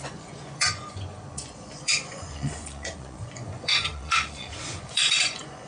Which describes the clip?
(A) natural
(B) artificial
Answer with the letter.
B